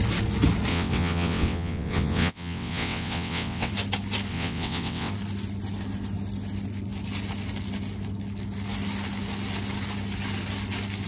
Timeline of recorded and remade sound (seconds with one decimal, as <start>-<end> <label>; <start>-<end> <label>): 0.0-0.7 recorded; 0.7-3.7 remade; 3.7-4.3 recorded; 4.3-5.1 remade; 5.1-11.1 recorded